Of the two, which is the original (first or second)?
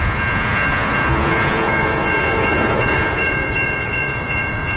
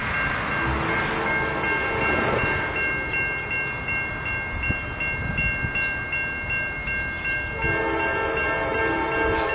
second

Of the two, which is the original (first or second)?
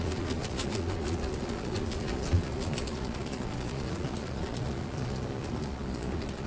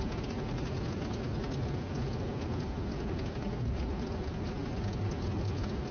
second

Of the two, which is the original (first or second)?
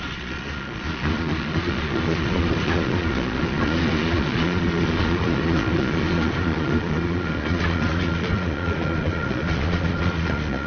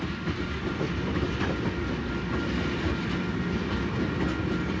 second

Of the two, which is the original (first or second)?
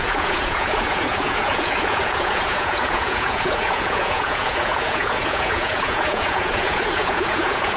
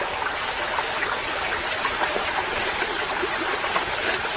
second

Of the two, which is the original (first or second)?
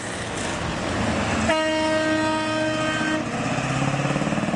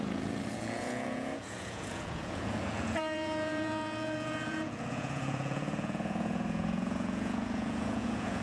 first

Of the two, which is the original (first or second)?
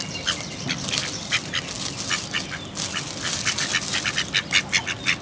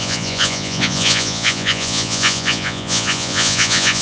first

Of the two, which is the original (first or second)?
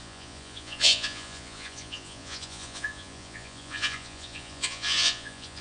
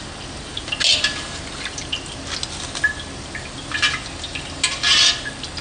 second